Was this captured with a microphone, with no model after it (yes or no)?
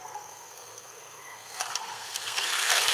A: no